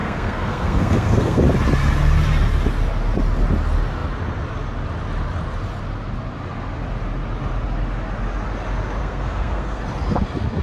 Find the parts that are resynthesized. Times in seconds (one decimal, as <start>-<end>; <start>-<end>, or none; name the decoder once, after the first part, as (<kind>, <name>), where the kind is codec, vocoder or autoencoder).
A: 0.0-1.4 (codec, SNAC); 9.0-9.8